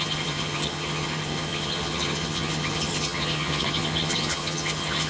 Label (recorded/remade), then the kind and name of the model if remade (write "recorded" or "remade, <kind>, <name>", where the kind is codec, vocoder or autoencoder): remade, vocoder, HiFi-GAN